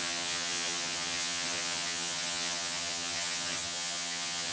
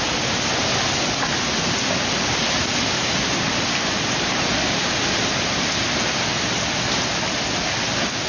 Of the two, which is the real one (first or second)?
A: second